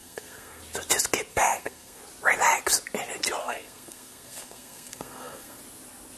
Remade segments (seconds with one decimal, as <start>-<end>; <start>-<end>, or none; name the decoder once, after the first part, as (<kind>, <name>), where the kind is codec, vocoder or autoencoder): 0.0-0.6 (codec, SNAC); 1.3-2.0; 3.4-5.6